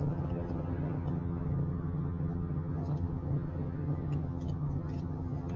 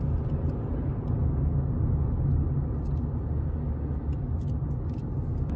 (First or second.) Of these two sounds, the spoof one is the first